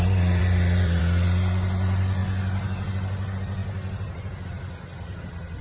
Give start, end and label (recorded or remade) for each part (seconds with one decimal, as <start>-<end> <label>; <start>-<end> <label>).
0.0-0.4 recorded; 0.4-1.0 remade; 1.0-5.6 recorded